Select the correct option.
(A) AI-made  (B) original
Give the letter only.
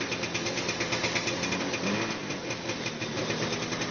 B